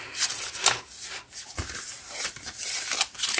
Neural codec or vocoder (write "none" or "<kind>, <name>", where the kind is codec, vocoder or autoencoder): none